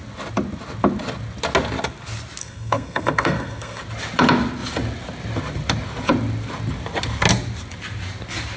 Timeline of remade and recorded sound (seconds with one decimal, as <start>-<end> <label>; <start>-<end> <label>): 0.0-2.4 recorded; 2.4-3.8 remade; 3.8-8.6 recorded